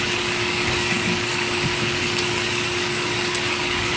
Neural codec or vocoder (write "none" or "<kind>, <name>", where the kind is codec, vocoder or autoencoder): codec, DAC